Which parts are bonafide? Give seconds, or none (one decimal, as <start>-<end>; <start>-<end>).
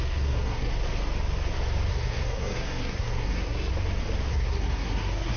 0.7-1.9; 3.7-4.3